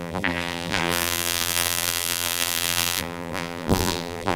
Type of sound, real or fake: fake